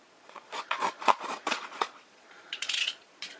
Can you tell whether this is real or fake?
fake